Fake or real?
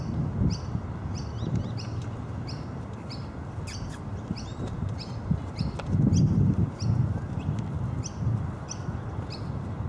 real